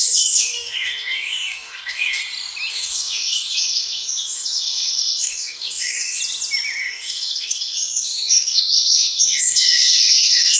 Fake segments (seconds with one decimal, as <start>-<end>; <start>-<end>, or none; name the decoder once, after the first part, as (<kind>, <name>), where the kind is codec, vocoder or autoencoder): 0.0-2.2 (codec, DAC); 2.7-6.2; 6.8-10.6